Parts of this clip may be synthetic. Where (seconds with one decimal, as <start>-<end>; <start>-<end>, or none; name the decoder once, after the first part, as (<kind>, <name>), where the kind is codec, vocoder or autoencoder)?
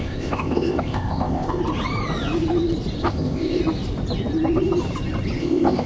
0.0-1.6 (codec, ZipCodec); 3.0-3.6; 5.4-5.9